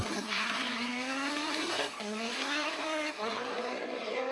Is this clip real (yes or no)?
no